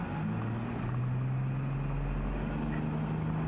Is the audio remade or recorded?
recorded